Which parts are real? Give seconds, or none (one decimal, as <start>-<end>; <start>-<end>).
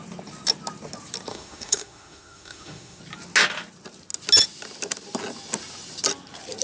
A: 0.0-1.3; 3.0-6.6